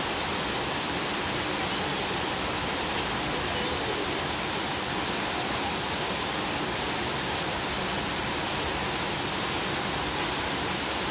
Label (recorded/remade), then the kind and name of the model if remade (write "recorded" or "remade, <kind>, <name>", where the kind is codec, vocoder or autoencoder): recorded